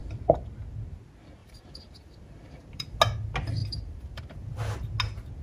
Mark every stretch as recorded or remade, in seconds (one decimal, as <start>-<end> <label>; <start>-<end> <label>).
0.0-1.4 recorded; 1.4-3.0 remade; 3.0-3.6 recorded; 3.6-4.2 remade; 4.2-5.4 recorded